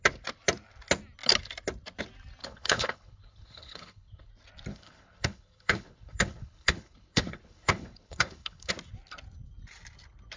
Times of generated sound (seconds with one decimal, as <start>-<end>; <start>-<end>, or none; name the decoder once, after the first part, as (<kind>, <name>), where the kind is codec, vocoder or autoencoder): 2.4-4.3 (codec, HILCodec); 4.7-8.7